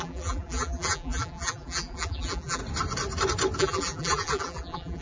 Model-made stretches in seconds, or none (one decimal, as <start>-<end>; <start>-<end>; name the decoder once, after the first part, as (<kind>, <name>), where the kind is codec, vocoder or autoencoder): 0.0-2.6 (vocoder, BigVGAN v2); 3.6-5.0